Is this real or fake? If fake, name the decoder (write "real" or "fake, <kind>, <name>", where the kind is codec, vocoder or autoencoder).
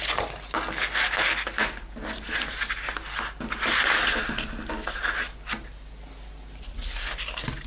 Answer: real